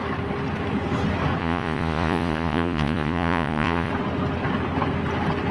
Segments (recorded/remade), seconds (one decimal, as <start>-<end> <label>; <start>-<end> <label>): 0.0-1.4 recorded; 1.4-3.9 remade; 3.9-5.5 recorded